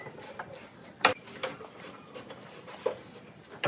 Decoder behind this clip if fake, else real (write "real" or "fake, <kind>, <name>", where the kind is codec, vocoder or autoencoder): fake, vocoder, BigVGAN v2